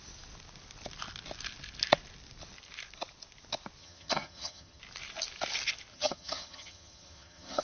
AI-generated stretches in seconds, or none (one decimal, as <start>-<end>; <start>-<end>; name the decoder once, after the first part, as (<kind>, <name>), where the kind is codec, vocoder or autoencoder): 3.8-4.8 (vocoder, HiFi-GAN); 5.9-7.6